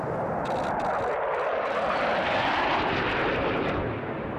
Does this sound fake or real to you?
real